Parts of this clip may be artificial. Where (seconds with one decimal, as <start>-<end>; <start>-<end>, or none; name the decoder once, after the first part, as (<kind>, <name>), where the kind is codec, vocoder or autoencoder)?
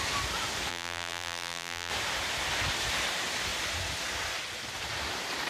0.7-1.9 (vocoder, BigVGAN v2)